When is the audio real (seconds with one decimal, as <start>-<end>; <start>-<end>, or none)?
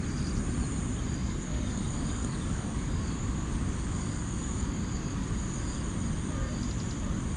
0.0-1.2; 5.6-7.4